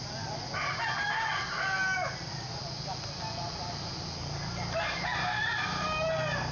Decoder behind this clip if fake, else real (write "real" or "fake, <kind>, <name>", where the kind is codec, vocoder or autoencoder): real